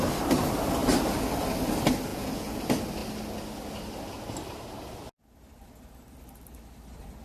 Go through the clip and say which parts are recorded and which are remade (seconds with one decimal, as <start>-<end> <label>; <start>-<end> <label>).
0.0-2.1 recorded; 2.1-2.6 remade; 2.6-7.2 recorded